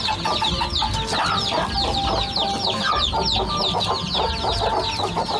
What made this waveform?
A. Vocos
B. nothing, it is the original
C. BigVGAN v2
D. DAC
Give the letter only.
B